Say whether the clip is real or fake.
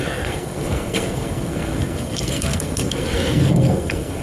fake